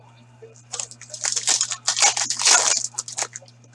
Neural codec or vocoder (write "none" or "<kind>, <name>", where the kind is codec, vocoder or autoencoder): none